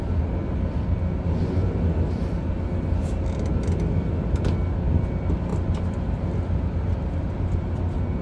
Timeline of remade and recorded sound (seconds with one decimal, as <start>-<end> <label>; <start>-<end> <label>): 0.0-8.2 recorded